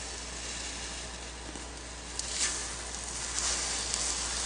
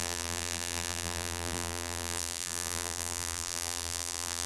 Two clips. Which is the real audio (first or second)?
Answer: first